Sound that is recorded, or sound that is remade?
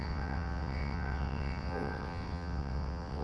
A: remade